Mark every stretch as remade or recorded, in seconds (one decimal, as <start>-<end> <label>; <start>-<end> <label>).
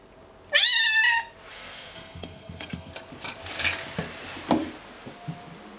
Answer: 0.0-1.5 recorded; 1.5-2.9 remade; 2.9-5.8 recorded